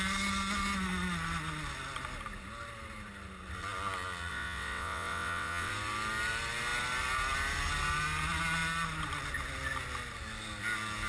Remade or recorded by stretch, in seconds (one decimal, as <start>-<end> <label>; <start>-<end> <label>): 0.0-4.3 recorded; 4.3-5.7 remade; 5.7-11.1 recorded